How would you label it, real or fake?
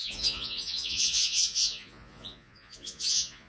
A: fake